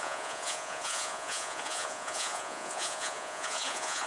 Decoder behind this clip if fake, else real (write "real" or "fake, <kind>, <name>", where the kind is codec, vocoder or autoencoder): fake, vocoder, Vocos